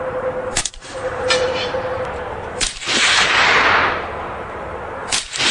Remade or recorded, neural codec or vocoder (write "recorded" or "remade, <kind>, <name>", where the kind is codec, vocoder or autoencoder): remade, vocoder, BigVGAN v2